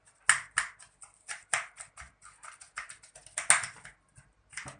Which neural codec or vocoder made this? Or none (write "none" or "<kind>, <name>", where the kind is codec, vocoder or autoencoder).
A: none